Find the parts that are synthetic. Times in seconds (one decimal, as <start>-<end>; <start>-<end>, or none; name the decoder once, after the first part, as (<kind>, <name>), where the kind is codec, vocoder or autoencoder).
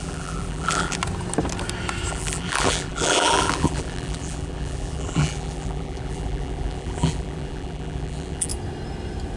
0.0-1.0 (vocoder, BigVGAN v2); 2.1-8.5